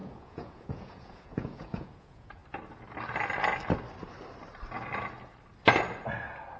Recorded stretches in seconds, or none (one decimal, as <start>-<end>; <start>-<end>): 2.4-6.6